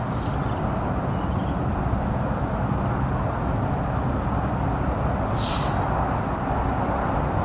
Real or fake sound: real